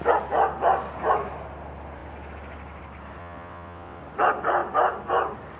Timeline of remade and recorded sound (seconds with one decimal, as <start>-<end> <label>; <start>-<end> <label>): 0.0-3.2 recorded; 3.2-4.0 remade; 4.0-5.6 recorded